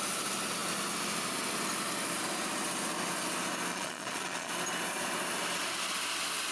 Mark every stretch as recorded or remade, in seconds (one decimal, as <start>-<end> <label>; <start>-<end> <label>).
0.0-3.7 recorded; 3.7-4.5 remade; 4.5-6.5 recorded